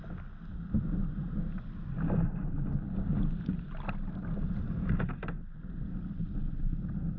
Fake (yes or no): no